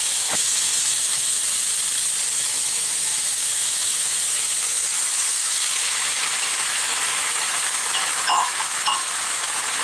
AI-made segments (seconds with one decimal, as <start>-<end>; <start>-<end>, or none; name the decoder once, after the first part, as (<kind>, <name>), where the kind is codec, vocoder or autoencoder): 0.0-1.5 (autoencoder, DAC-VAE); 2.3-9.8